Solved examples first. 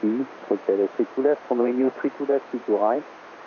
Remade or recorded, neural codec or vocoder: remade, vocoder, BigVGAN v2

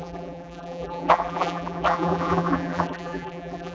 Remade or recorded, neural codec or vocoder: remade, vocoder, BigVGAN v2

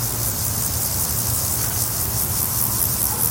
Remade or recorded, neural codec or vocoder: recorded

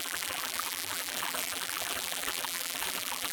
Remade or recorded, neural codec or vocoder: remade, vocoder, BigVGAN v2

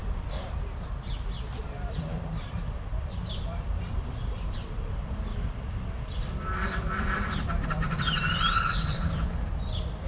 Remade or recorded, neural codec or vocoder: remade, vocoder, BigVGAN v2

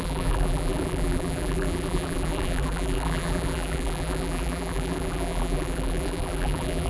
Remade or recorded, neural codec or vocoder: remade, vocoder, BigVGAN v2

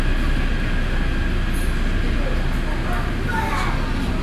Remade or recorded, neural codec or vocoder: recorded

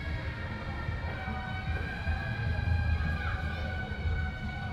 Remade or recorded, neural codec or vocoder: recorded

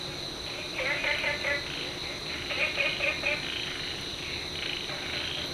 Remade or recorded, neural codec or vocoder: recorded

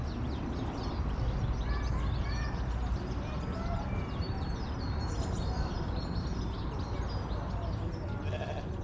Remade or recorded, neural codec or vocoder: recorded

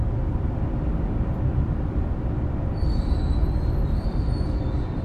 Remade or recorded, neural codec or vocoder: remade, vocoder, BigVGAN v2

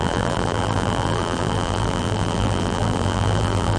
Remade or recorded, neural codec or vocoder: remade, vocoder, BigVGAN v2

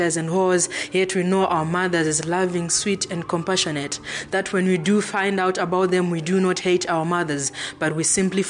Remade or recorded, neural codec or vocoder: recorded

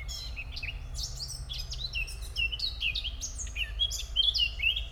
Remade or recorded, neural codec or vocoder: recorded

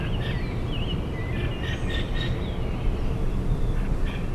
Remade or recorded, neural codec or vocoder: recorded